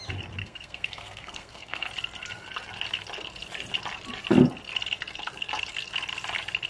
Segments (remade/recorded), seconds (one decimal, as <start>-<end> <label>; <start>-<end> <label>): 0.0-0.4 recorded; 0.4-1.9 remade; 1.9-6.7 recorded